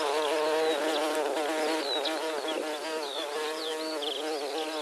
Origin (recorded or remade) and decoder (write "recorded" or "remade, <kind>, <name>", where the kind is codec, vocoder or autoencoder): recorded